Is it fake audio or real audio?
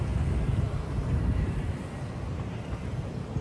real